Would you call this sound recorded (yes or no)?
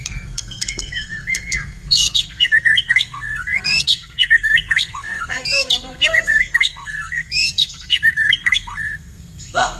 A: no